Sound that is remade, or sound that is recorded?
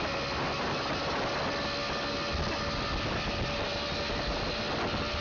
recorded